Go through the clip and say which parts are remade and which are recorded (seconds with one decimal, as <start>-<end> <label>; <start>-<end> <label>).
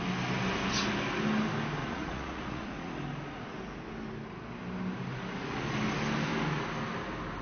0.0-1.8 recorded; 1.8-2.9 remade; 2.9-7.4 recorded